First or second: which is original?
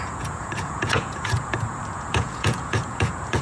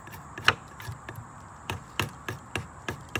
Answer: second